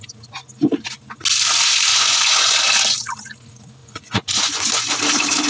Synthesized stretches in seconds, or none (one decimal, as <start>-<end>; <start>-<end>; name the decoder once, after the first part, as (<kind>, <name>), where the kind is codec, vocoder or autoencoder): 1.9-2.5 (vocoder, Vocos); 3.8-4.9